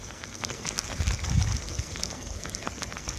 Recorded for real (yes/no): no